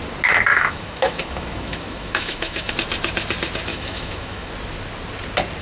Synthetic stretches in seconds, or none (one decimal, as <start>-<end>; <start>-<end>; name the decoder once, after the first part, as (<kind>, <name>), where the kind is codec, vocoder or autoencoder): 0.5-2.7 (autoencoder, DAC-VAE); 3.7-4.5

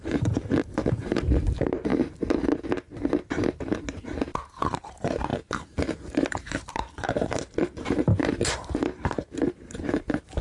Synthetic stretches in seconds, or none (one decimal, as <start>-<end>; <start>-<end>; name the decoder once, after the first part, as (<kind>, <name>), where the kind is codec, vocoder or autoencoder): 0.0-1.9 (vocoder, BigVGAN v2); 4.0-10.4

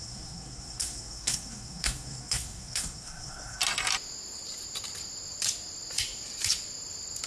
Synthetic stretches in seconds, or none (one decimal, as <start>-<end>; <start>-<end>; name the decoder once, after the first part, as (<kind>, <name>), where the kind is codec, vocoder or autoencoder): 0.0-3.6 (codec, SNAC)